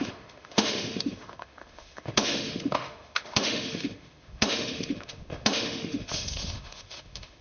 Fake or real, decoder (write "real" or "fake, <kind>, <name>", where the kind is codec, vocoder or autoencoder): fake, autoencoder, DAC-VAE